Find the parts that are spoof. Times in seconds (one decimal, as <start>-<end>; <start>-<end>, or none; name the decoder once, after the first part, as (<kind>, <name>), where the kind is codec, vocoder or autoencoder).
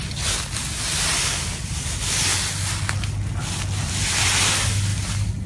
none